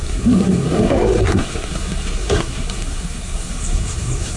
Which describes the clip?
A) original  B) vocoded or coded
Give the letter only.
B